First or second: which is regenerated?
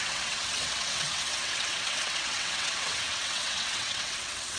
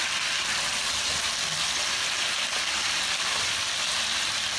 first